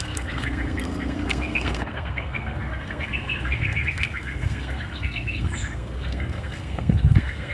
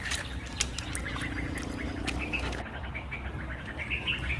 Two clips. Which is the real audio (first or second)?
second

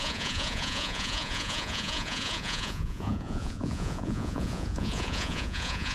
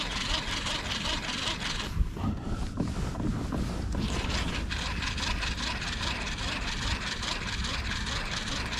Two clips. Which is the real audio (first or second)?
second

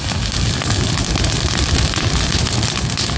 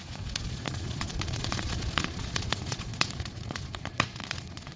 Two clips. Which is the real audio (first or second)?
first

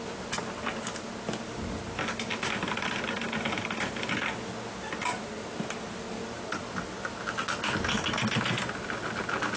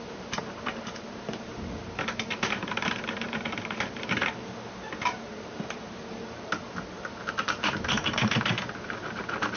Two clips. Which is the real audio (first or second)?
first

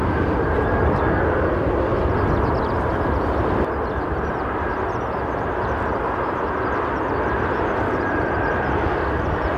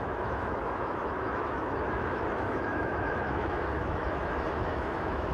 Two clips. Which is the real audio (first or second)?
first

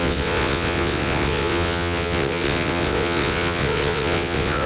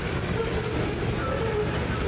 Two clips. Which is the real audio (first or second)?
second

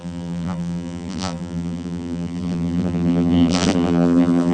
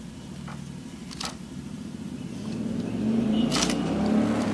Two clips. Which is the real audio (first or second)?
second